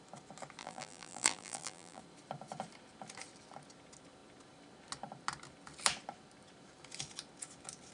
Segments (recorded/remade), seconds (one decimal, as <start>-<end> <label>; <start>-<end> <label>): 0.0-0.6 recorded; 0.6-2.0 remade; 2.0-7.9 recorded